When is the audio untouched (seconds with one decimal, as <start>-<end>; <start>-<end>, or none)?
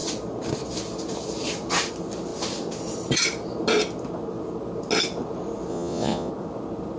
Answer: 0.0-5.7; 6.3-7.0